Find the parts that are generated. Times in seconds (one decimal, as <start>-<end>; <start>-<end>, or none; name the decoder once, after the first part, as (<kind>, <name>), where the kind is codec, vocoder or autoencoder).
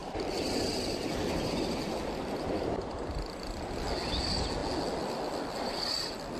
0.0-3.8 (vocoder, BigVGAN v2)